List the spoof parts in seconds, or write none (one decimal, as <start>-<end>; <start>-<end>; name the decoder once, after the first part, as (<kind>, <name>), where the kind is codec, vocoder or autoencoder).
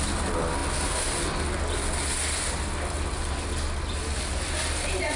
none